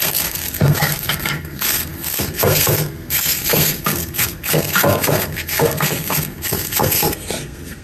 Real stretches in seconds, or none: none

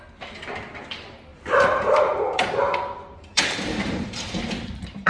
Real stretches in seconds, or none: 0.0-1.3; 4.4-5.1

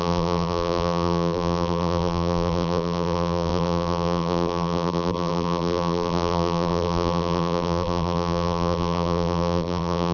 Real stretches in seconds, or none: none

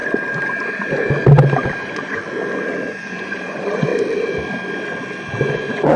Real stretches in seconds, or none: 0.0-1.8; 2.2-2.9; 3.9-5.4

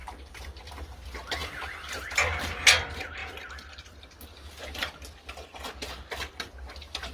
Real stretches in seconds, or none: 0.5-1.4; 2.4-7.1